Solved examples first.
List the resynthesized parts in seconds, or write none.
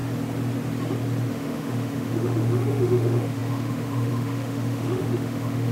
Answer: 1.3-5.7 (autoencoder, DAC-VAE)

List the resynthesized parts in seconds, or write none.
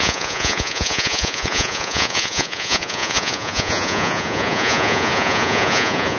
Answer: 0.0-6.2 (vocoder, Vocos)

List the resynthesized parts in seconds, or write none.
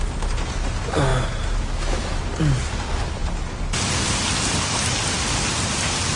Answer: none